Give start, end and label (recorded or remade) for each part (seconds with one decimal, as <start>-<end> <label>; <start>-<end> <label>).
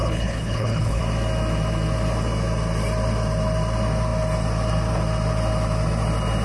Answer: 0.0-1.0 remade; 1.0-6.4 recorded